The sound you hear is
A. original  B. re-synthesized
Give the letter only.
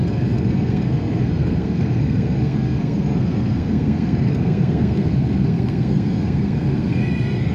B